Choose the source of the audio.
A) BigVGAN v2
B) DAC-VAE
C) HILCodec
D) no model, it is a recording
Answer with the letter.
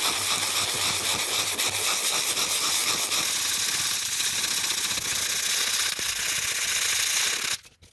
D